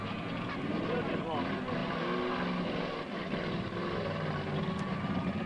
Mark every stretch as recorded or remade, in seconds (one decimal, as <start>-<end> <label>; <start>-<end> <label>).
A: 0.0-5.5 recorded